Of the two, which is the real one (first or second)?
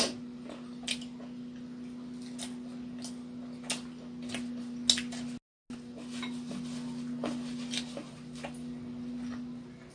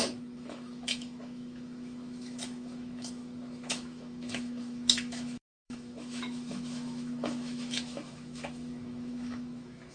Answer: first